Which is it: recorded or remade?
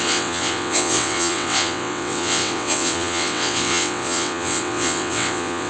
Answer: remade